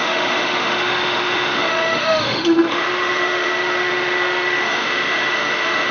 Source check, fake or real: fake